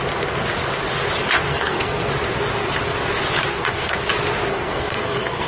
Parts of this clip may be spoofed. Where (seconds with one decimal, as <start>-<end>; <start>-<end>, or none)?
1.5-2.1; 3.5-4.1; 4.5-5.5